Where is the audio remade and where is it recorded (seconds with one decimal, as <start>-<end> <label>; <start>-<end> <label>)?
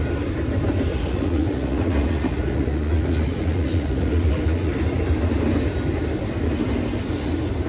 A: 0.0-0.9 recorded; 0.9-4.7 remade; 4.7-7.7 recorded